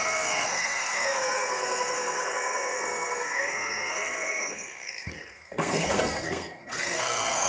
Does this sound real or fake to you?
fake